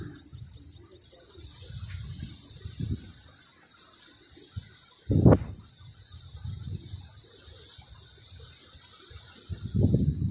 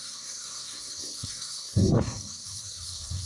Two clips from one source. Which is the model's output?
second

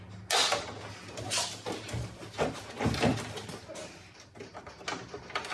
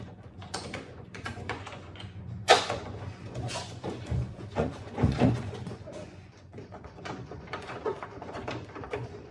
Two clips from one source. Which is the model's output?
second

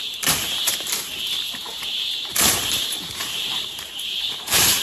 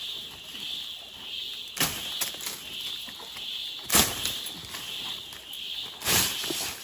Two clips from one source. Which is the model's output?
first